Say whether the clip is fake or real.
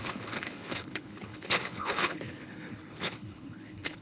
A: fake